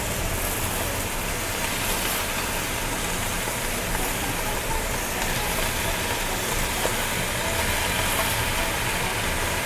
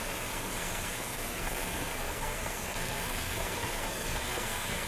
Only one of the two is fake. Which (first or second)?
second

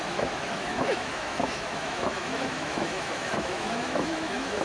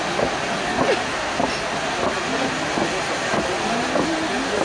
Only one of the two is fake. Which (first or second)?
first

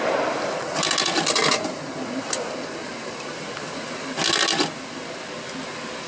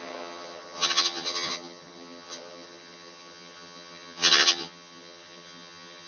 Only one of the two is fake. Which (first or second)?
second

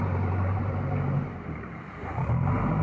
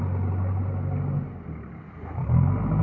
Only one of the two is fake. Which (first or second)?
first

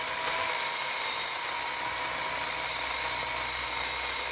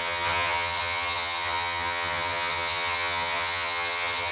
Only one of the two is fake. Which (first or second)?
second